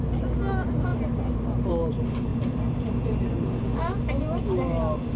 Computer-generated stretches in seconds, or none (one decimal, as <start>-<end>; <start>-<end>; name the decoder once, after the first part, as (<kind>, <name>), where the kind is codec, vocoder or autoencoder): 0.9-1.7 (vocoder, BigVGAN v2); 2.3-2.9